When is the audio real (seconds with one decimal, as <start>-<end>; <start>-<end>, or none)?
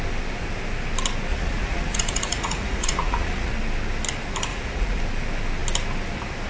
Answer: 0.0-1.3; 3.5-4.5; 5.0-6.5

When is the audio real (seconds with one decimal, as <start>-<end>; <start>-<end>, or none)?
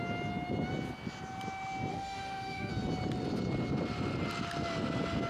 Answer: 0.0-1.9; 2.7-5.3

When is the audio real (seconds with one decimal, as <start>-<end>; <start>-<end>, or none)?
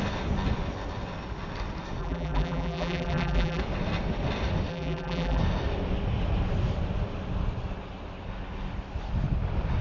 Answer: 0.0-2.0; 3.6-4.7; 5.4-9.8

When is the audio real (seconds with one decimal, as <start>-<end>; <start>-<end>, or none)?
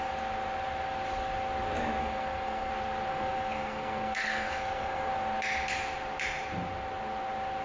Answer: 0.0-2.0; 2.7-3.1; 5.1-7.6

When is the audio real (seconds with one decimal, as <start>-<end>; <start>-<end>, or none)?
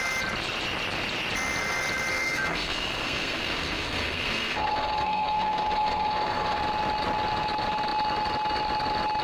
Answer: 0.0-2.1; 6.6-9.2